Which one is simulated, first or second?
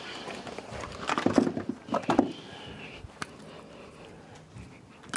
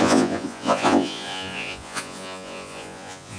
second